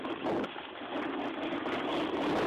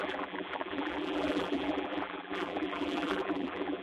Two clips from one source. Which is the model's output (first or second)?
second